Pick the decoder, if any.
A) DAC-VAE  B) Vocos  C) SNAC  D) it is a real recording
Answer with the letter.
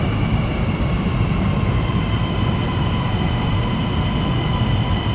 D